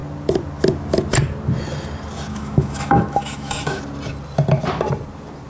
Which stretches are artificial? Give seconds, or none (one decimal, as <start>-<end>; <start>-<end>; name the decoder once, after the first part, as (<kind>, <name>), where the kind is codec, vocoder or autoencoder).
2.3-3.8 (autoencoder, DAC-VAE)